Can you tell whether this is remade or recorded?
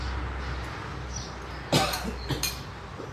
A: recorded